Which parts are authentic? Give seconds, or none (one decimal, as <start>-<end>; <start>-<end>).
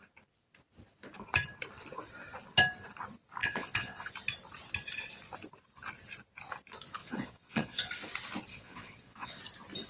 0.0-3.4; 4.1-7.0; 7.9-8.5; 9.4-9.9